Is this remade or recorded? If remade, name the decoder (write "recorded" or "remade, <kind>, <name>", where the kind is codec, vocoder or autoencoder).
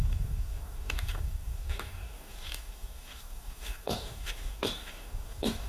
remade, codec, DAC